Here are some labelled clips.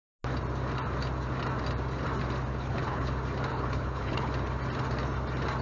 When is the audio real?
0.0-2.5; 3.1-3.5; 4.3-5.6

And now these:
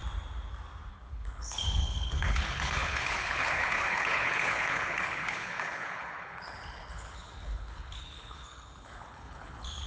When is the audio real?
0.0-0.9

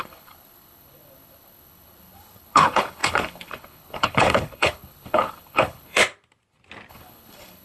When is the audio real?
6.0-6.9

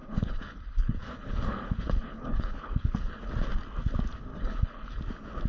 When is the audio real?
3.3-4.3; 5.0-5.5

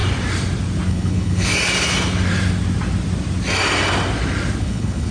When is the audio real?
0.0-0.9; 1.5-4.6

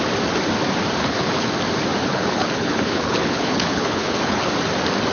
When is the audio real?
0.0-1.0; 1.5-2.0; 4.5-5.1